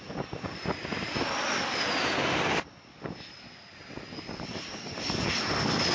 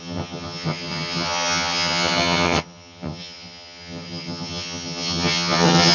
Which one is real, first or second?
first